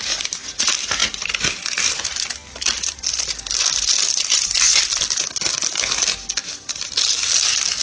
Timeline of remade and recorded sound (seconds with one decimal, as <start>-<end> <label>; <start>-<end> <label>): 0.0-7.8 recorded